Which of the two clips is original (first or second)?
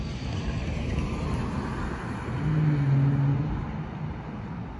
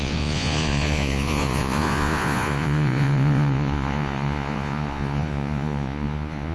first